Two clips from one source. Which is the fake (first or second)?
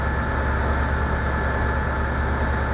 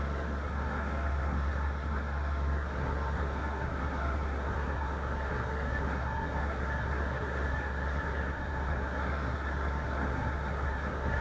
second